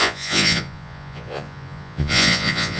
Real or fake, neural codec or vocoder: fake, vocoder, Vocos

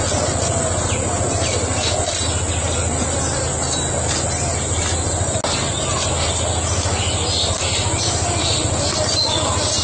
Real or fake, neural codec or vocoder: real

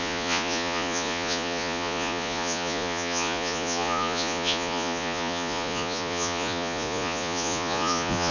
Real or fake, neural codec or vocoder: fake, vocoder, Vocos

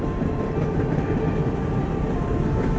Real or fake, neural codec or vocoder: real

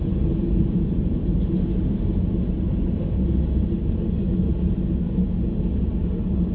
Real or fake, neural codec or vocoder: real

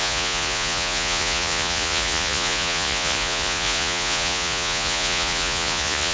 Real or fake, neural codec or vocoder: fake, vocoder, Vocos